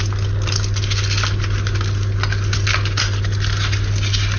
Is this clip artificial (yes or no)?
no